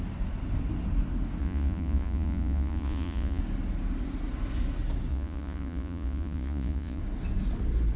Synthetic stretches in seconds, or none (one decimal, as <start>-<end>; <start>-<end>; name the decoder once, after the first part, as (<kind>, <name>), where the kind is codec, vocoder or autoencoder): 1.4-3.4 (vocoder, Vocos); 5.1-7.0